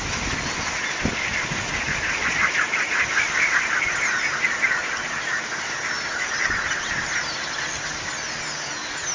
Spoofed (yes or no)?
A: no